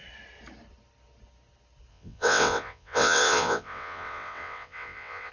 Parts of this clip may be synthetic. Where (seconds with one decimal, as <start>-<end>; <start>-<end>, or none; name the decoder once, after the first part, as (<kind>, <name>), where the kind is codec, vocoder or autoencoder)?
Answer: 1.9-5.3 (vocoder, WaveNeXt)